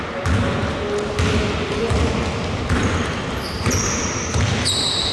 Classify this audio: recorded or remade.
recorded